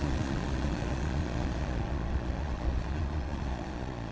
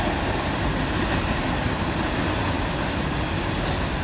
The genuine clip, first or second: second